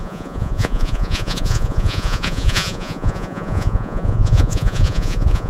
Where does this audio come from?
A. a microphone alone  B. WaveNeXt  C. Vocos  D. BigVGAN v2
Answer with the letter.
C